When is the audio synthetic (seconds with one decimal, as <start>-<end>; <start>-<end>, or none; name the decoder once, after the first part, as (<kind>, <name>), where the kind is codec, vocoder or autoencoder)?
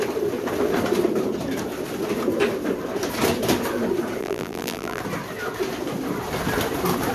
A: 4.2-5.0 (vocoder, BigVGAN v2)